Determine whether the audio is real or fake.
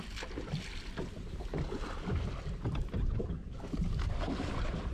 real